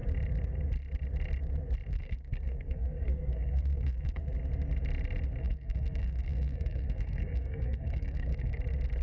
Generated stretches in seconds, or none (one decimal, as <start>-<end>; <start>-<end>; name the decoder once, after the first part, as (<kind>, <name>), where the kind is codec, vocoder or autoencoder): 1.9-4.2 (codec, SNAC); 5.4-8.6